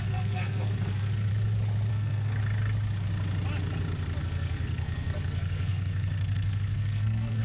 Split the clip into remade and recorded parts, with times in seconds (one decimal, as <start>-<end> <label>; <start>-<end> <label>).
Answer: 0.0-1.3 remade; 1.3-1.9 recorded; 1.9-2.4 remade; 2.4-4.2 recorded; 4.2-7.4 remade